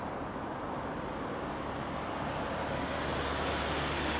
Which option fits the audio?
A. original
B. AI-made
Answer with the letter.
A